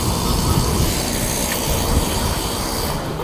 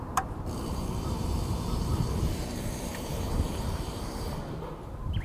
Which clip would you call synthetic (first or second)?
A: second